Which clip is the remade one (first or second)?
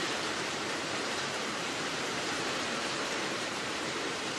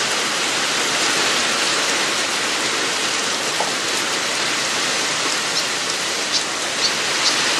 first